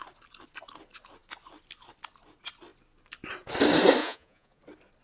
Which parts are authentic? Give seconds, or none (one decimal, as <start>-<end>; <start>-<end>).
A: 0.0-4.0; 4.6-5.0